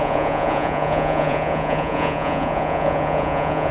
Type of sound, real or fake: fake